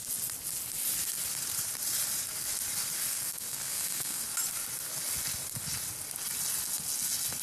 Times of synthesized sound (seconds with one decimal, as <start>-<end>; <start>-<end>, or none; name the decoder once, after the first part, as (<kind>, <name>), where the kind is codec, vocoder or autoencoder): 3.1-4.2 (codec, SNAC)